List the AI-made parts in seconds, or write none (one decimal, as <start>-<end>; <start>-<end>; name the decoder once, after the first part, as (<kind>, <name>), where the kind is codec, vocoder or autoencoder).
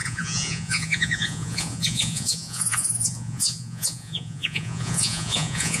0.0-5.8 (vocoder, Vocos)